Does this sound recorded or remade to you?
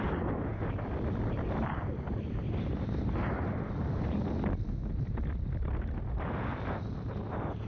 recorded